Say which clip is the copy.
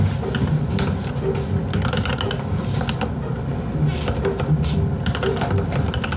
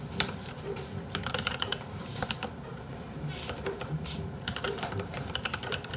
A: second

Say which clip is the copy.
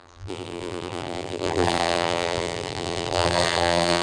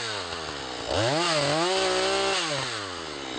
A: first